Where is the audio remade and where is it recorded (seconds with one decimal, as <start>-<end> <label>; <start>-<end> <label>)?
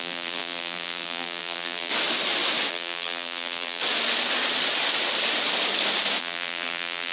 0.0-1.9 remade; 1.9-2.7 recorded; 2.7-3.8 remade; 3.8-6.2 recorded; 6.2-7.1 remade